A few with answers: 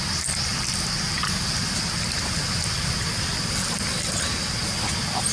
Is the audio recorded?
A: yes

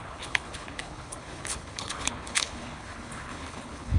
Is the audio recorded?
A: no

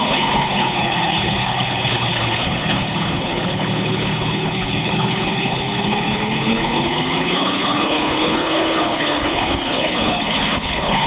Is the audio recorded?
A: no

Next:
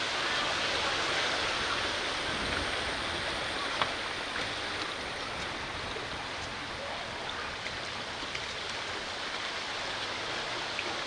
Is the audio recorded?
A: yes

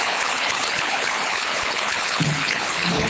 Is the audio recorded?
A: no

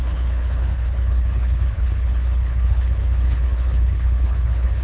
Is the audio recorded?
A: no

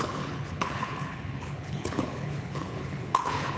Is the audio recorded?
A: no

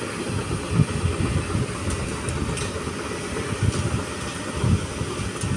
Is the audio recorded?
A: yes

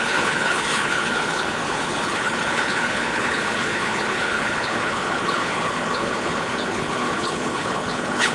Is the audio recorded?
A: no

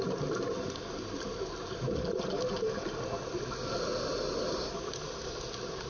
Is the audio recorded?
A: yes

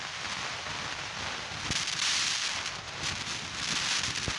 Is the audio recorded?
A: yes